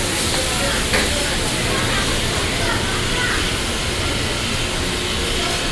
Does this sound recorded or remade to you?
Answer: recorded